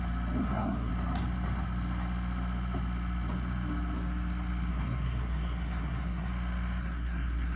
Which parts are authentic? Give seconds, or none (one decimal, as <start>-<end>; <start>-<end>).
0.0-0.4; 0.9-4.7; 6.3-6.8